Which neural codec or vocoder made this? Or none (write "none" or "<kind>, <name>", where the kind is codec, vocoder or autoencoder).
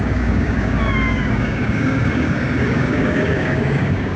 codec, DAC